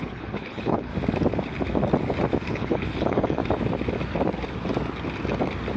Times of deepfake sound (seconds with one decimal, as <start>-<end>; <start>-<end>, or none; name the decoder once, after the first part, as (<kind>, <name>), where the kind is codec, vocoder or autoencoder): 0.0-0.9 (codec, HILCodec); 2.5-3.4